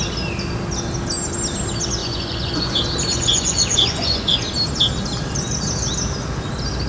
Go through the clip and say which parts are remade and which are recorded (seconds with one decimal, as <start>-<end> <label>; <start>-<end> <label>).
0.0-2.0 recorded; 2.0-2.7 remade; 2.7-3.1 recorded; 3.1-4.4 remade; 4.4-6.9 recorded